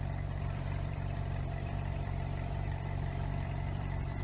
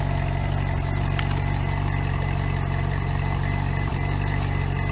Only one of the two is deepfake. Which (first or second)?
first